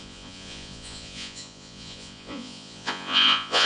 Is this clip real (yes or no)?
no